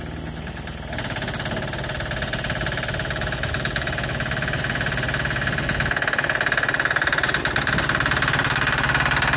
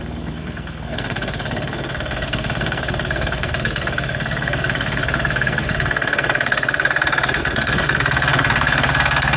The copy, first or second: second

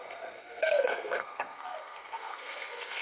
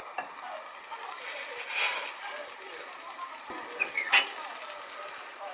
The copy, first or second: first